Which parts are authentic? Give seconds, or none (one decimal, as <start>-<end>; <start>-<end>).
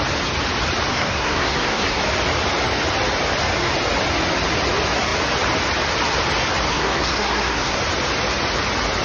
0.0-0.9; 2.0-6.7; 7.8-9.0